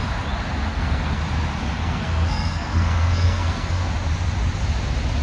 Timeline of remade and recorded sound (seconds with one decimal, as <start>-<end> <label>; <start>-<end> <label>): 0.0-0.7 recorded; 0.7-1.2 remade; 1.2-1.6 recorded; 1.6-3.9 remade; 3.9-5.2 recorded